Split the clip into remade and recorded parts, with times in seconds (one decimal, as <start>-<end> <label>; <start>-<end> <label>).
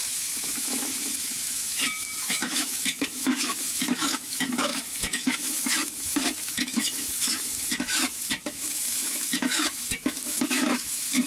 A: 0.0-11.3 remade